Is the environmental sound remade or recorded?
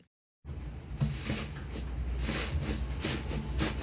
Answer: recorded